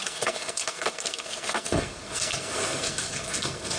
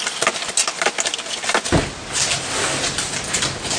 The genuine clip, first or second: second